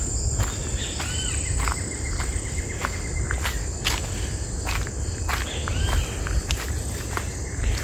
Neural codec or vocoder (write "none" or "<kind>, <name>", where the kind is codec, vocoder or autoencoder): none